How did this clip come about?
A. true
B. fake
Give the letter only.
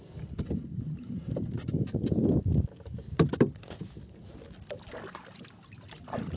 B